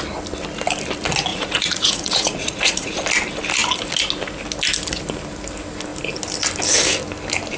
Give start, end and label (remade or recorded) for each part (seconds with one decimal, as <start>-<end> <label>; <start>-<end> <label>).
0.0-1.3 recorded; 1.3-3.0 remade; 3.0-7.6 recorded